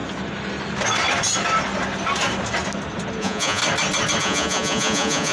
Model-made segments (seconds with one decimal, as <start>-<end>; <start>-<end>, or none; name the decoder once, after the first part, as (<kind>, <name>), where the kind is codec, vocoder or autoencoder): 3.2-3.6 (vocoder, Vocos); 4.2-5.3